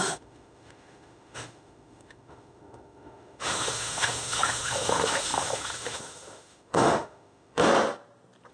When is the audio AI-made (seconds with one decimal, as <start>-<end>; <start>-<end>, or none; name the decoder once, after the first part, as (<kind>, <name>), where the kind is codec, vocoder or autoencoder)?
0.0-7.6 (autoencoder, DAC-VAE)